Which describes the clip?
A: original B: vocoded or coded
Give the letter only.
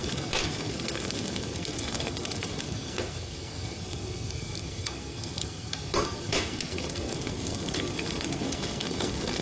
B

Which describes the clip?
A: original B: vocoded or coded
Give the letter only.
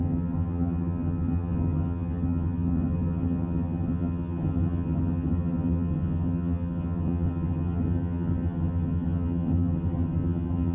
B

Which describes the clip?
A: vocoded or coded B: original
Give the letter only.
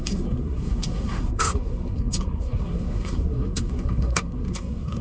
A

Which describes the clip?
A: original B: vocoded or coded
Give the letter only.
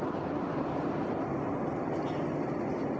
A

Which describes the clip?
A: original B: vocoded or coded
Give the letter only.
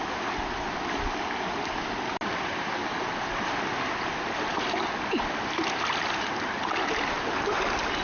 A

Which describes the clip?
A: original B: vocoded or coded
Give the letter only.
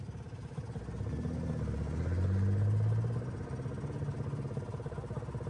A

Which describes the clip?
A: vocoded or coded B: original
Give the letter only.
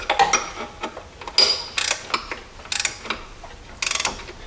B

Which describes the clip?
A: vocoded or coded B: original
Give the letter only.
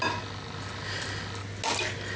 B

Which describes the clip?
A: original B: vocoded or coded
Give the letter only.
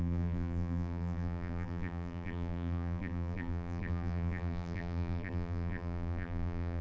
B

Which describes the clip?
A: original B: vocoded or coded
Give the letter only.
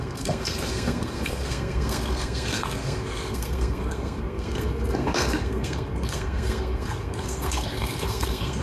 B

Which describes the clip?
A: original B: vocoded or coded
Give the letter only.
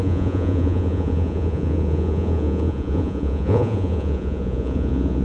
B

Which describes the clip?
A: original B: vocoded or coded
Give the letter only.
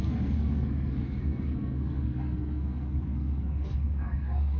B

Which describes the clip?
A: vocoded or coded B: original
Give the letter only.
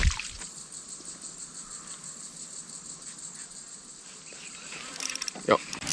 B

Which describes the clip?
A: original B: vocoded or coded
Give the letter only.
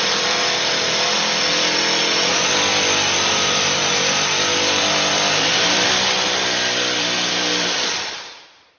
B